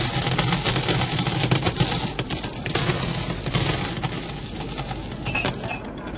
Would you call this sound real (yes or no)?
yes